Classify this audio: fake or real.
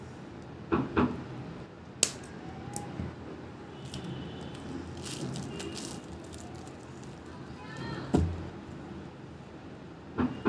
real